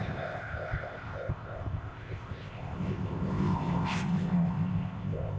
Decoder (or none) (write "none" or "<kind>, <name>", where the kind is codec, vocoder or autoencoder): codec, ZipCodec